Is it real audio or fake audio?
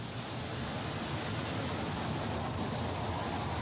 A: real